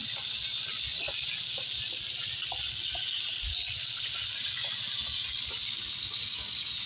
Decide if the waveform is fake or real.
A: real